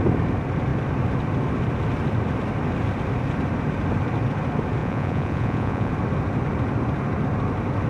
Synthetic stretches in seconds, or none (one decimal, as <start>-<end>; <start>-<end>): 4.8-5.9